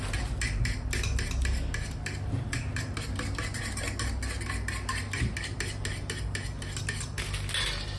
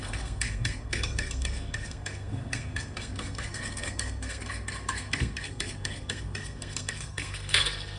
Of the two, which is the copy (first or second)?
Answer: second